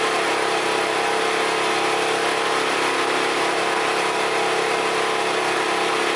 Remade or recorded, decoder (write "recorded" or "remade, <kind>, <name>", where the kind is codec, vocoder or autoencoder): recorded